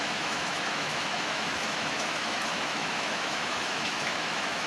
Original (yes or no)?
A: no